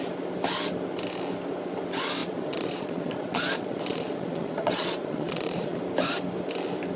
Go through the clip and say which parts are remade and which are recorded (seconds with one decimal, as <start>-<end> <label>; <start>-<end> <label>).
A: 0.0-2.2 recorded; 2.2-5.8 remade; 5.8-7.0 recorded